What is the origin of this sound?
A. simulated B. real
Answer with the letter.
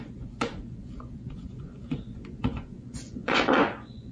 A